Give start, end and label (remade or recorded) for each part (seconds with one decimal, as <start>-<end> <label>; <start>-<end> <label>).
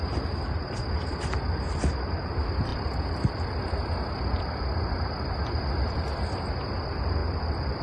0.0-7.2 recorded; 7.2-7.8 remade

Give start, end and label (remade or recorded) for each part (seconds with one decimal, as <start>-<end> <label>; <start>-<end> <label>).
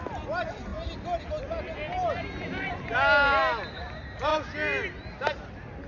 0.0-5.9 recorded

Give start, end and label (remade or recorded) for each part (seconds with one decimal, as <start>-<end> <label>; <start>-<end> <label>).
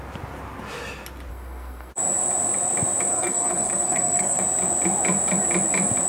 0.0-1.3 recorded; 1.3-1.9 remade; 1.9-3.1 recorded; 3.1-4.4 remade; 4.4-6.1 recorded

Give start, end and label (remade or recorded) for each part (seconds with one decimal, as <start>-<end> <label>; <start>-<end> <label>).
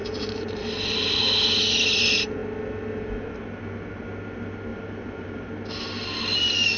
0.0-1.2 remade; 1.2-4.7 recorded; 4.7-5.5 remade; 5.5-6.8 recorded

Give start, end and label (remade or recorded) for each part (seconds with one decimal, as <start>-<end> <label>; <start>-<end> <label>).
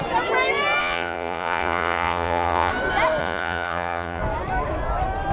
0.0-0.8 recorded; 0.8-2.7 remade; 2.7-3.2 recorded; 3.2-4.2 remade; 4.2-5.3 recorded